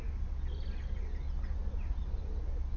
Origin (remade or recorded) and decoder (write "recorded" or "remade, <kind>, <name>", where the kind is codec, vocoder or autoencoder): recorded